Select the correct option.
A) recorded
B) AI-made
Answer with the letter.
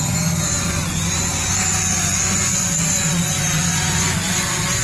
B